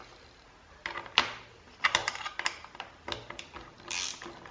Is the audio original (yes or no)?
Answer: yes